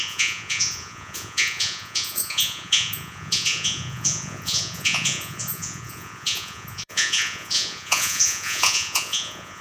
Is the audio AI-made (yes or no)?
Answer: yes